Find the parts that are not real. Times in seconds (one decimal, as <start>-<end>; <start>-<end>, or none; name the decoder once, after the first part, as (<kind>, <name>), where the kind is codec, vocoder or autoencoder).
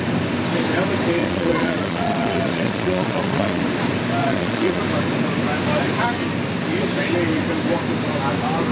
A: 1.2-3.6 (vocoder, Vocos); 4.2-4.8